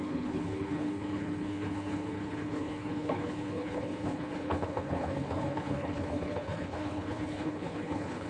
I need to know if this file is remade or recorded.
remade